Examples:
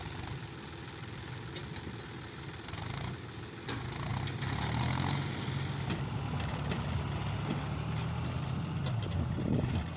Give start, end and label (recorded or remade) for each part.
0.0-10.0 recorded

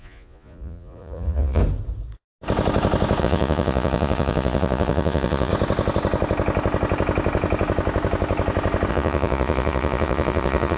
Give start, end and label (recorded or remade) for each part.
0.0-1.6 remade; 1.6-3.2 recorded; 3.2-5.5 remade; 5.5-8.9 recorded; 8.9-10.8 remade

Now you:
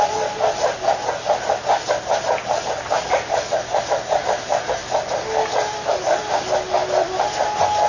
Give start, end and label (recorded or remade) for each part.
0.0-7.9 recorded

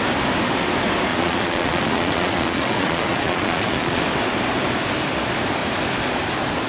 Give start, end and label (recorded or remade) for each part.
0.0-1.1 recorded; 1.1-4.0 remade; 4.0-6.7 recorded

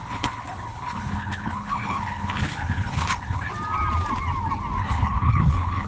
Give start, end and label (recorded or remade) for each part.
0.0-3.5 remade; 3.5-4.8 recorded; 4.8-5.9 remade

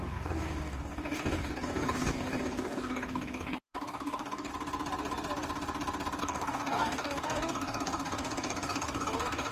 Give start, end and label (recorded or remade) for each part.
0.0-4.5 remade; 4.5-6.2 recorded; 6.2-9.5 remade

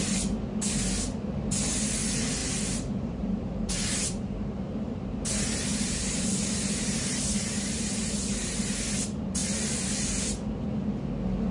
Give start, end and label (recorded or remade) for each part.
0.0-2.4 recorded; 2.4-5.0 remade; 5.0-5.7 recorded; 5.7-8.6 remade; 8.6-11.5 recorded

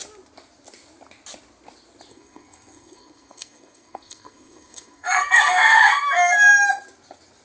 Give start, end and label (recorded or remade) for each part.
0.0-2.1 recorded; 2.1-6.5 remade; 6.5-7.4 recorded